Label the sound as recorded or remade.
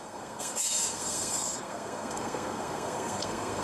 remade